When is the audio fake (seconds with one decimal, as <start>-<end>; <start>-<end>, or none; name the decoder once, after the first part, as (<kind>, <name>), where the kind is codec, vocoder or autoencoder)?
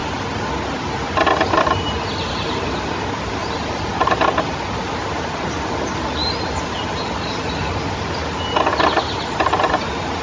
3.4-5.2 (vocoder, BigVGAN v2)